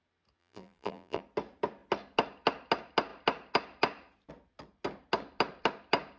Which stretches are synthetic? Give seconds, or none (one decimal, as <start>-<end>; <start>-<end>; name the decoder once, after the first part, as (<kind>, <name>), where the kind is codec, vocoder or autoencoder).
0.4-1.2 (vocoder, BigVGAN v2)